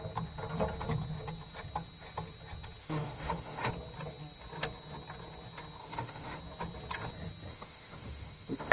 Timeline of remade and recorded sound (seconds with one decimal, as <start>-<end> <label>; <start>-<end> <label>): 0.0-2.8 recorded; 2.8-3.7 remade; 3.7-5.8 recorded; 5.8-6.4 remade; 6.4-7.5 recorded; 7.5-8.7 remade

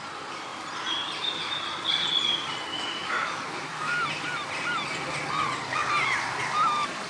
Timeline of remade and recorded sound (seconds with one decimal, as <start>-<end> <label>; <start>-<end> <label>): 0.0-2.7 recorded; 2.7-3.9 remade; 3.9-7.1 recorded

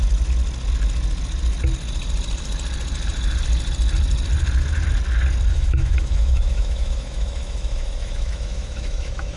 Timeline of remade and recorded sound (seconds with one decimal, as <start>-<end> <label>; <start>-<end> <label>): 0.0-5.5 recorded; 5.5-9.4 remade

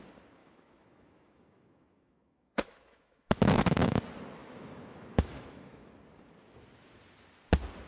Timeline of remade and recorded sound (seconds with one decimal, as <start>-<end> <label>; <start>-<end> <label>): 0.0-0.4 recorded; 0.4-4.0 remade; 4.0-4.4 recorded; 4.4-5.9 remade; 5.9-7.9 recorded

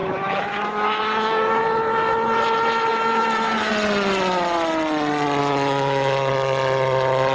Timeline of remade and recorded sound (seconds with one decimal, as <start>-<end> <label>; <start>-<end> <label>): 0.0-1.6 remade; 1.6-2.9 recorded; 2.9-3.7 remade; 3.7-5.4 recorded; 5.4-6.3 remade; 6.3-7.3 recorded